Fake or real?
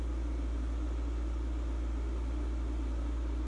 real